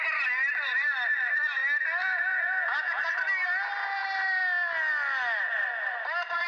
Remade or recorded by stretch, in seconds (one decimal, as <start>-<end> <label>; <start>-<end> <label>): 0.0-2.0 recorded; 2.0-3.0 remade; 3.0-6.5 recorded

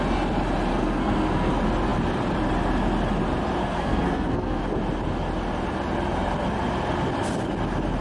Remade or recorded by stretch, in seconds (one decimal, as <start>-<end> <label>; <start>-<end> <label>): 0.0-0.7 recorded; 0.7-1.5 remade; 1.5-3.6 recorded; 3.6-4.6 remade; 4.6-8.0 recorded